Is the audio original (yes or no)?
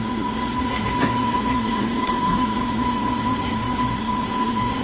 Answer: no